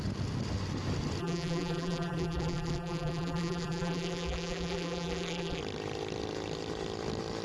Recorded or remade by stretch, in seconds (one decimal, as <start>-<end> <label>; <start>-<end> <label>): 0.0-1.2 recorded; 1.2-5.6 remade; 5.6-7.4 recorded